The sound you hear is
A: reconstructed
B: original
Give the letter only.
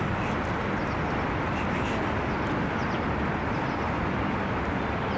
B